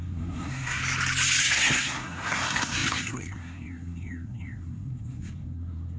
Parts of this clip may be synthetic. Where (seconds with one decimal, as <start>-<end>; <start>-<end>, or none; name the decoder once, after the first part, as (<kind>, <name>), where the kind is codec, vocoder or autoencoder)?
0.0-0.8 (codec, SNAC); 1.4-6.0